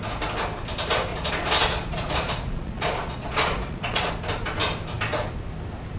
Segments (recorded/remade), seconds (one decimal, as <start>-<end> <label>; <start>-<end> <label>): 0.0-1.1 recorded; 1.1-4.1 remade; 4.1-6.0 recorded